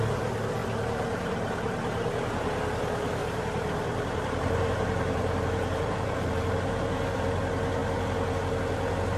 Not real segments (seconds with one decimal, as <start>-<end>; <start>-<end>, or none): 0.6-2.1; 3.2-7.2

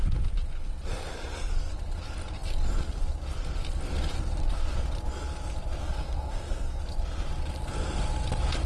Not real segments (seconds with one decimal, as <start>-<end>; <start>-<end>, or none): 5.8-6.8

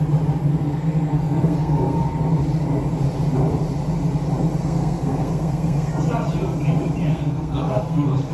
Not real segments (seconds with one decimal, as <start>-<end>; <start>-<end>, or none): 0.5-2.0; 4.6-5.9; 7.1-8.3

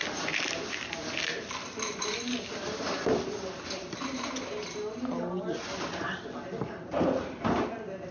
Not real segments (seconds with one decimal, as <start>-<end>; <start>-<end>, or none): 0.0-3.3

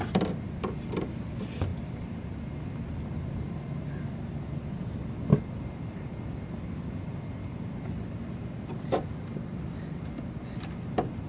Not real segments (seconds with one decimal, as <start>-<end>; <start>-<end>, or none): none

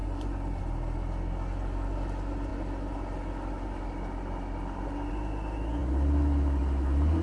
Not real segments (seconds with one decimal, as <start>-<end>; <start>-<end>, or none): none

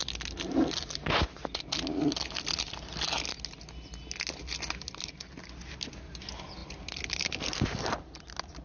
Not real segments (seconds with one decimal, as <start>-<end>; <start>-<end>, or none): none